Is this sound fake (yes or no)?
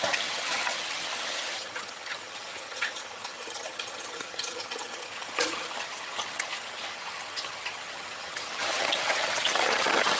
yes